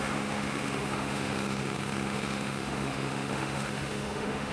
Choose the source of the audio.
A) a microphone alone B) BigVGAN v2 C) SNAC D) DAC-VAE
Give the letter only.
D